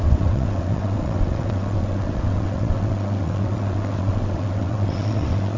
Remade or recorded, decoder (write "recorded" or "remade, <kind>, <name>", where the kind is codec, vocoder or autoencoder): remade, vocoder, WaveNeXt